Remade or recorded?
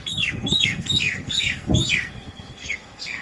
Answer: remade